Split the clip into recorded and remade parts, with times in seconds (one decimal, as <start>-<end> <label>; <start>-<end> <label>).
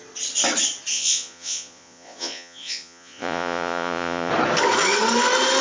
0.0-0.9 recorded; 0.9-4.3 remade; 4.3-5.6 recorded